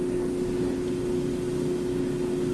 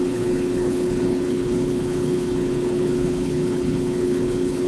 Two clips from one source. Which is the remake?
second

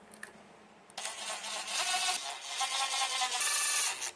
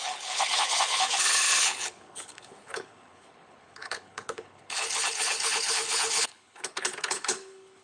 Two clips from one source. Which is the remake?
second